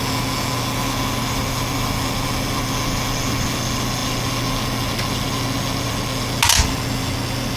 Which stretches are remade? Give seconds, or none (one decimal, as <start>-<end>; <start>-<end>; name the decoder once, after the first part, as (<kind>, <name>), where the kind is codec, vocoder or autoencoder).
none